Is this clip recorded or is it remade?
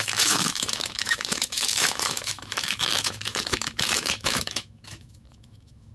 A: remade